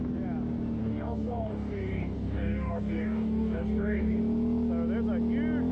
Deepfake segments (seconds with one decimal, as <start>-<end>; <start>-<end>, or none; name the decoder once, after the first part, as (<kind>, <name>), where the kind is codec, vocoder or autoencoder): 0.8-4.2 (codec, DAC)